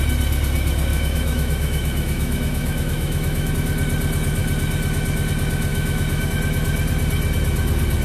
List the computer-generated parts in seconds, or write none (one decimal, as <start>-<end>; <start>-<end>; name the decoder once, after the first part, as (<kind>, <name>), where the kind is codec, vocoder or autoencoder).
0.9-3.5 (autoencoder, DAC-VAE); 5.7-6.3